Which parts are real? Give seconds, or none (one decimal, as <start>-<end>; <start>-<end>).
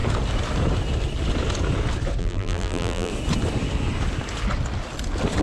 0.0-2.2; 3.1-5.4